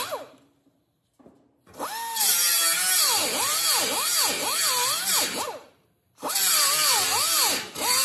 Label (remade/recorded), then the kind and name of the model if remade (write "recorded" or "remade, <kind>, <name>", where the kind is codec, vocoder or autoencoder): remade, vocoder, BigVGAN v2